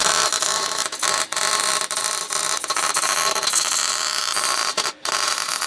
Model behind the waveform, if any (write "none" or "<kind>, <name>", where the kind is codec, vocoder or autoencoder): none